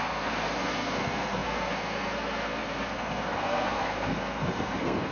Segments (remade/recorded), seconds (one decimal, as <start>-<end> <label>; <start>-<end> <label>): 0.0-5.1 remade